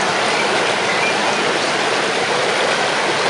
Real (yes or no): yes